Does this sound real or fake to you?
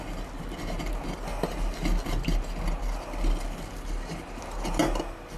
real